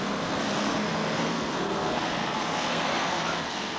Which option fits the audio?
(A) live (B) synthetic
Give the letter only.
B